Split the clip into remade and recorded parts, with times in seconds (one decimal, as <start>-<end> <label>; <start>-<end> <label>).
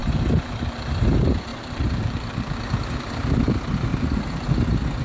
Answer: 0.0-0.9 remade; 0.9-1.5 recorded; 1.5-3.5 remade; 3.5-3.9 recorded; 3.9-4.5 remade; 4.5-5.0 recorded